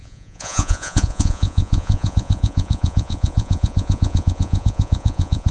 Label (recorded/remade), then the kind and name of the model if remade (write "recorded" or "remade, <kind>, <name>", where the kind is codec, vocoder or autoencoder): remade, vocoder, Vocos